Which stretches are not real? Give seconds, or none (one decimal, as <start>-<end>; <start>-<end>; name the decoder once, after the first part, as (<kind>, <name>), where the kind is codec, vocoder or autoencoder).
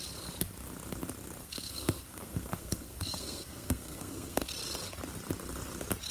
1.4-4.5 (codec, SNAC)